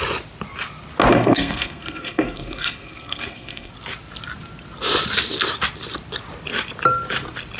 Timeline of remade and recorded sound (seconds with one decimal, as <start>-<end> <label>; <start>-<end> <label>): 0.0-1.1 recorded; 1.1-3.7 remade; 3.7-7.6 recorded